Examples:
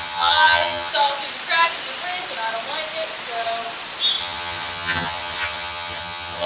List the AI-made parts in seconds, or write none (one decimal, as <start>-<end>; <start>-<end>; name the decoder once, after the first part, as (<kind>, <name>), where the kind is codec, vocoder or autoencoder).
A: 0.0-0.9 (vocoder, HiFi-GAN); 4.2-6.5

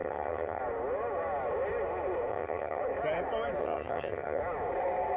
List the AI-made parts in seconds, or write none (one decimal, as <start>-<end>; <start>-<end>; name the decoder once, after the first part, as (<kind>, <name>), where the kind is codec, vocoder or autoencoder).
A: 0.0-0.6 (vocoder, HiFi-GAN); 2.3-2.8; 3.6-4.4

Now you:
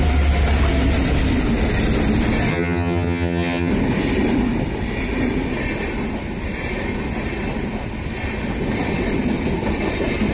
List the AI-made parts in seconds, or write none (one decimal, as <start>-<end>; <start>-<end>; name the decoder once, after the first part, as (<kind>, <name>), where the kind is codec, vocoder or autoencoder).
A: 2.5-3.7 (vocoder, HiFi-GAN)

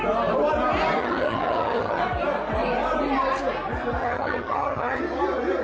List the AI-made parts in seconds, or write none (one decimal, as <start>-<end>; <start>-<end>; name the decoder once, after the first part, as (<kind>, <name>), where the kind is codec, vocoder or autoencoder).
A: 1.0-2.0 (vocoder, HiFi-GAN); 4.0-5.0

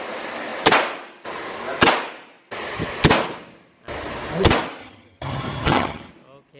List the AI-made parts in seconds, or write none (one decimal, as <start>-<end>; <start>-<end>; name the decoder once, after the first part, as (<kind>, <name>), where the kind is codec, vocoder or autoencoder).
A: 4.8-6.1 (vocoder, HiFi-GAN)

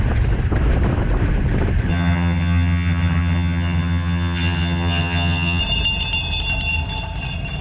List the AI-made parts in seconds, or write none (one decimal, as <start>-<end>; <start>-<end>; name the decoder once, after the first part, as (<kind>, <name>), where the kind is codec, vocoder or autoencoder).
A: 1.9-5.6 (vocoder, HiFi-GAN)

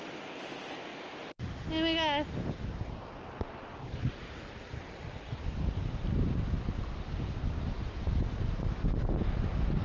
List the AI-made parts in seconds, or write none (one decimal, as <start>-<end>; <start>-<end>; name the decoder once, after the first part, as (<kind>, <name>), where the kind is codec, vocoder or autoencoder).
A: none

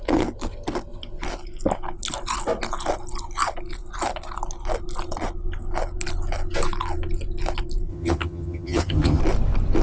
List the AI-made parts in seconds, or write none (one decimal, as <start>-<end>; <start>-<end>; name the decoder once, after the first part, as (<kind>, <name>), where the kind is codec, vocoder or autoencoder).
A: 7.9-9.2 (vocoder, HiFi-GAN)